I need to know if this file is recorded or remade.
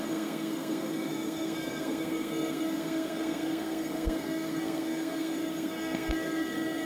remade